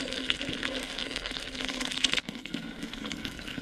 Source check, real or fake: fake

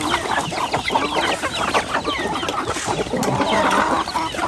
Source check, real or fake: real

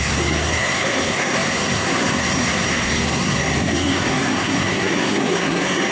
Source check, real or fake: fake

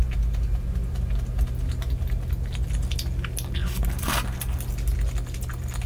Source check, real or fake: real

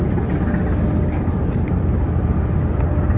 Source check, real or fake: real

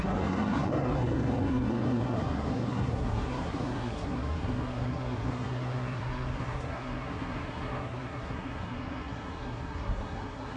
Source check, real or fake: fake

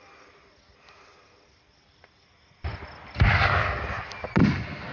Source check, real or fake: real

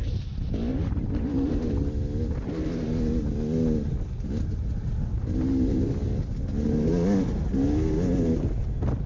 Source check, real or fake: real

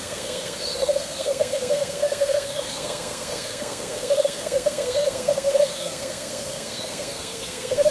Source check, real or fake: fake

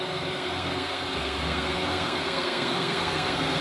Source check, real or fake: fake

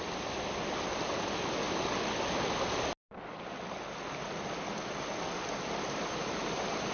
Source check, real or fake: real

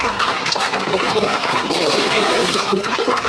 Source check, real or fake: fake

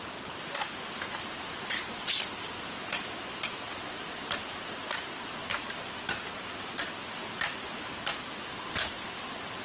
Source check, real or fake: real